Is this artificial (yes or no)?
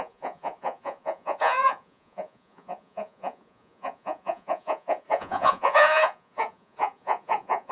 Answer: yes